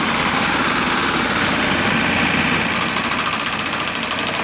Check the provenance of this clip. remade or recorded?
recorded